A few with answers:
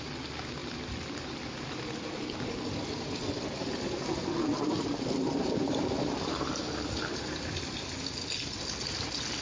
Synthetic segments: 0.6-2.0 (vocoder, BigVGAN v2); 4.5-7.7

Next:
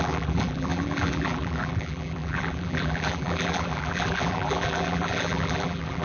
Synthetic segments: 0.0-6.0 (vocoder, BigVGAN v2)